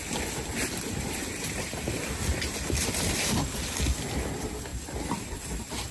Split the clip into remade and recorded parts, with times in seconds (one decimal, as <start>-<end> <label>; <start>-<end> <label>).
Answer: 0.0-1.2 recorded; 1.2-2.2 remade; 2.2-4.7 recorded; 4.7-5.4 remade; 5.4-5.9 recorded